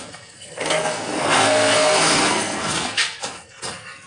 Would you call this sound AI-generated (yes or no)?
yes